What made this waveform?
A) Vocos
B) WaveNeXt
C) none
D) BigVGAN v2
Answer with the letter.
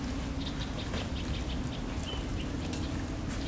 C